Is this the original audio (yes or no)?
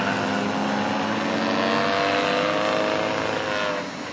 yes